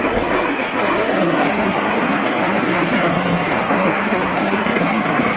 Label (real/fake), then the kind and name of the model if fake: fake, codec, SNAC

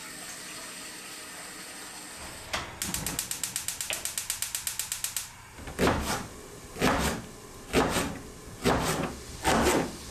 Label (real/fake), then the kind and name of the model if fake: real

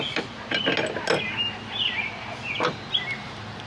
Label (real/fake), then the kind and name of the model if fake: real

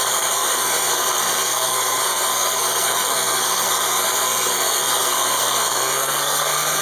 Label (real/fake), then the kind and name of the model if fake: fake, codec, SNAC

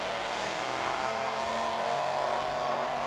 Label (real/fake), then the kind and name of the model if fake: fake, codec, SNAC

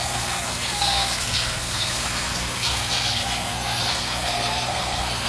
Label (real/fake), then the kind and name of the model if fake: fake, codec, SNAC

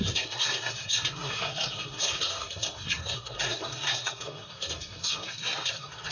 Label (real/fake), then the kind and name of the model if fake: fake, codec, SNAC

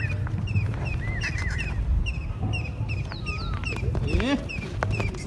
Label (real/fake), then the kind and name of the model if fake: real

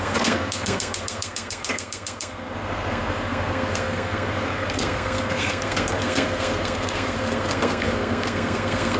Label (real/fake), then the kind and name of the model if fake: fake, codec, SNAC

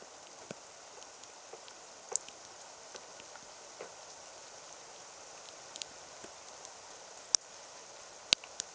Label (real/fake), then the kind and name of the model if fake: real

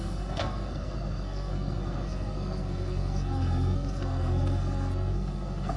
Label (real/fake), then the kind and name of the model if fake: fake, codec, SNAC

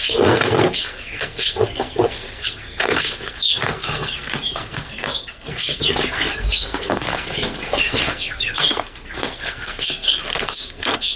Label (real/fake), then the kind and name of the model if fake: fake, codec, SNAC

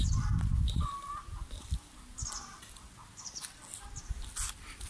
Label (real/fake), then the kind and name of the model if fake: real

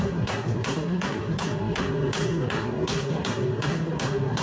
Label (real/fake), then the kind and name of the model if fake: fake, codec, SNAC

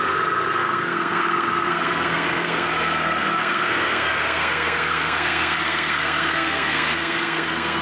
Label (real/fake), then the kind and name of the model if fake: fake, codec, SNAC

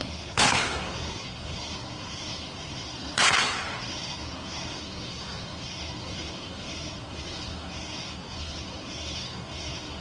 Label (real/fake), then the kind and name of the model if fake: fake, codec, SNAC